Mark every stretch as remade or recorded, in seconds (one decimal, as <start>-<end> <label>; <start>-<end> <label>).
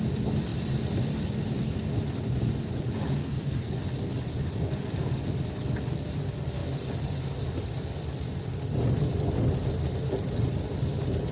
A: 0.0-3.2 recorded; 3.2-3.7 remade; 3.7-11.3 recorded